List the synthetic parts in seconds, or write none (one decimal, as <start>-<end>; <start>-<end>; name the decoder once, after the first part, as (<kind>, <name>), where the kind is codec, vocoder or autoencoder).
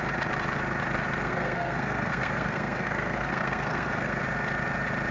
1.2-4.2 (codec, SNAC)